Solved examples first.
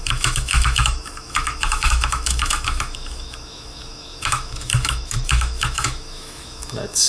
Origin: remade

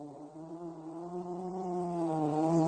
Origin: remade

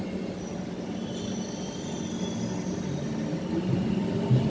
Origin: recorded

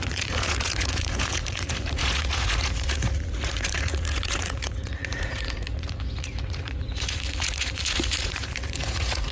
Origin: remade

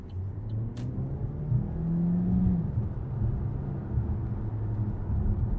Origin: recorded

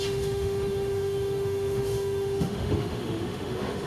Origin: remade